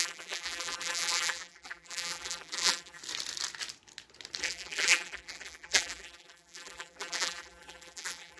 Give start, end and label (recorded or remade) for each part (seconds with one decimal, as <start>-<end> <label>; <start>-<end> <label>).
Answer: 0.0-3.0 remade; 3.0-4.4 recorded; 4.4-8.4 remade